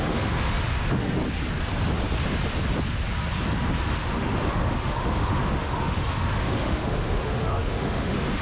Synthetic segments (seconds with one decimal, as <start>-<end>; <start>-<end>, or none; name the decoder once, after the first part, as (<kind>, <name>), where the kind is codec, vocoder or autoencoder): 0.0-1.2 (autoencoder, DAC-VAE); 3.8-8.4